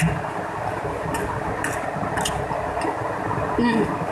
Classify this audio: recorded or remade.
recorded